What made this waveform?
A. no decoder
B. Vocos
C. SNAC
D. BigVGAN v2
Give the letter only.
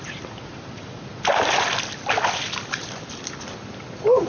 A